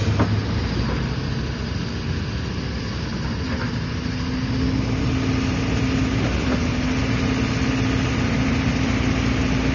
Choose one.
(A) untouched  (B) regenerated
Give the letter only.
A